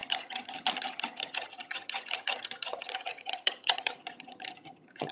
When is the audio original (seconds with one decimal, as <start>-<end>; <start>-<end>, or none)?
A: none